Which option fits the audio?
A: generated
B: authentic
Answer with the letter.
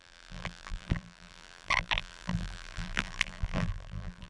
A